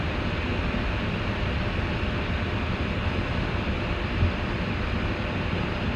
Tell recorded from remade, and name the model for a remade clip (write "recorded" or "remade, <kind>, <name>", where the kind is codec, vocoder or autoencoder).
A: remade, vocoder, BigVGAN v2